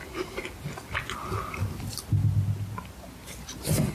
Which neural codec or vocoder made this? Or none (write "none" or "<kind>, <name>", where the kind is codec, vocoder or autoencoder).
none